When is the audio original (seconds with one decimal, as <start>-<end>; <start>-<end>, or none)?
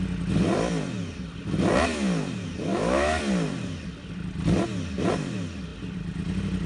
0.0-2.7; 3.2-6.7